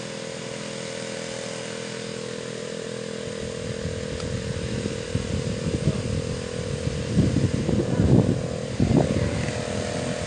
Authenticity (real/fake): real